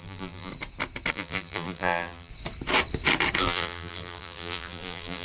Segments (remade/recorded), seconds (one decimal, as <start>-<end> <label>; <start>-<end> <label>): 0.0-0.5 remade; 0.5-1.1 recorded; 1.1-2.3 remade; 2.3-3.4 recorded; 3.4-5.2 remade